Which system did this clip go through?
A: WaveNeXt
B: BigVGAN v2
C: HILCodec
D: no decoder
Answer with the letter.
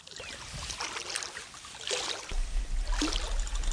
D